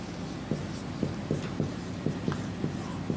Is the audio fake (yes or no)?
no